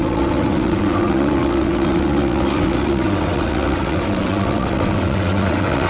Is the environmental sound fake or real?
fake